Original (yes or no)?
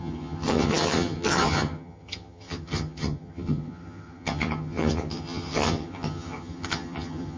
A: no